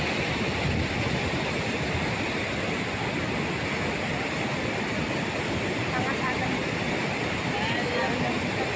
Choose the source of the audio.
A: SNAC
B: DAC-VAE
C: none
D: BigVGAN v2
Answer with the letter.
C